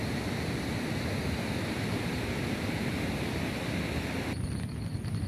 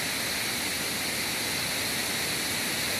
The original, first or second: second